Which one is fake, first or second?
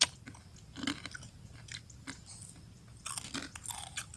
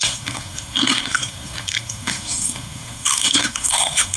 second